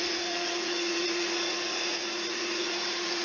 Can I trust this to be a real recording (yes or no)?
no